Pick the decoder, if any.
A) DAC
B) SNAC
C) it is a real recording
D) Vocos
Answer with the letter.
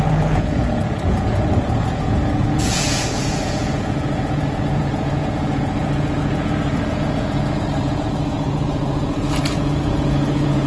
D